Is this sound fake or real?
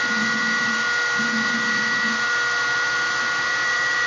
real